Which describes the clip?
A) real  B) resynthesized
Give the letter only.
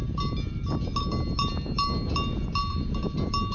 A